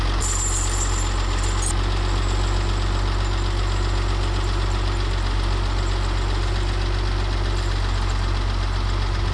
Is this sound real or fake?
real